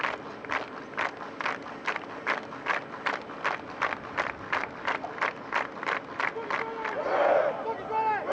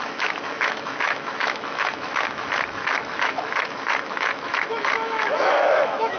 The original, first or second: first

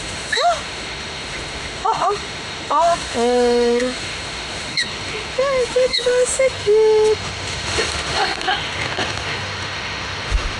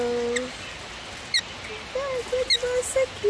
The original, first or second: second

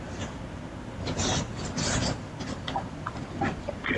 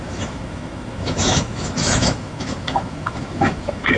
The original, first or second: first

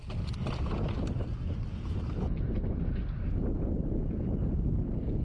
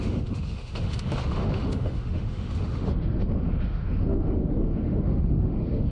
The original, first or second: first